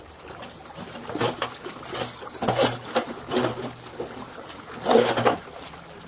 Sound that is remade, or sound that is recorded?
recorded